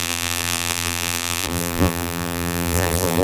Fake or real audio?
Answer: fake